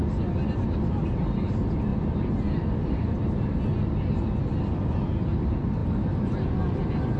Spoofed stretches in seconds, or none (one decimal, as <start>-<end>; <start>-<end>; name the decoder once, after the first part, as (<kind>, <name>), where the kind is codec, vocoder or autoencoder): none